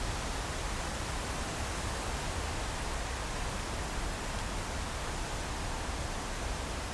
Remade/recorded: recorded